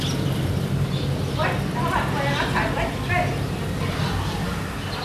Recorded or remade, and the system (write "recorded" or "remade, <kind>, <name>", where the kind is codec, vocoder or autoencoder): recorded